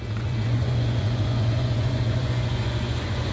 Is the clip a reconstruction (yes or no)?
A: yes